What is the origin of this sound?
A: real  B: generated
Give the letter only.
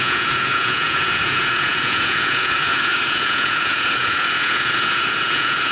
B